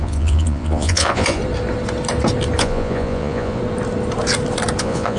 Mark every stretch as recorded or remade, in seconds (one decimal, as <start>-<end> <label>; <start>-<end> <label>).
0.0-1.4 remade; 1.4-2.6 recorded; 2.6-3.6 remade; 3.6-4.8 recorded; 4.8-5.2 remade